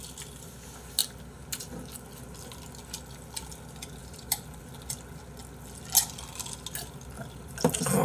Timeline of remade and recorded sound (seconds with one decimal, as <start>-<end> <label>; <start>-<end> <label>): 0.0-4.0 recorded; 4.0-4.6 remade; 4.6-8.0 recorded